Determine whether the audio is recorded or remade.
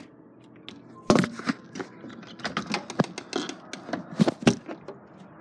recorded